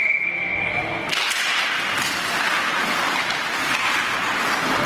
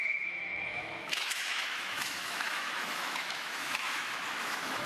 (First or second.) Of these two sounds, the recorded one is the first